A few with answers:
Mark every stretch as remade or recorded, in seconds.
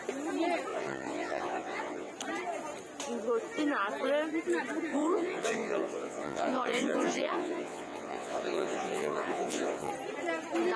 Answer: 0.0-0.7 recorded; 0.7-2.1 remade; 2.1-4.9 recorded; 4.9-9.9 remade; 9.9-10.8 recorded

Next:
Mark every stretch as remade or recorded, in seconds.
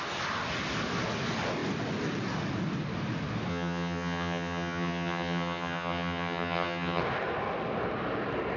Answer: 0.0-3.5 recorded; 3.5-7.0 remade; 7.0-8.6 recorded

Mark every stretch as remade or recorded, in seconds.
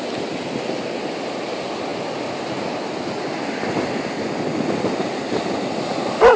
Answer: 0.0-6.4 recorded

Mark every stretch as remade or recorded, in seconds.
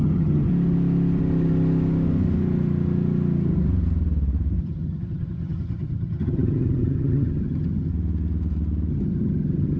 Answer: 0.0-0.5 remade; 0.5-4.6 recorded; 4.6-7.9 remade; 7.9-8.9 recorded; 8.9-9.8 remade